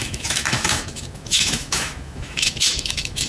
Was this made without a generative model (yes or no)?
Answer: no